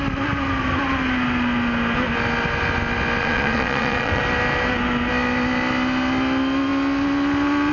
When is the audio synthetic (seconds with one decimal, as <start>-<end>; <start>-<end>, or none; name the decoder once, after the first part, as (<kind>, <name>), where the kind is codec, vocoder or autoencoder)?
3.2-4.2 (vocoder, Vocos)